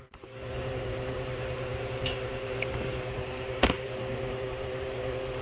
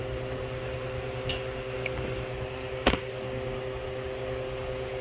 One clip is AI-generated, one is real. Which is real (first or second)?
second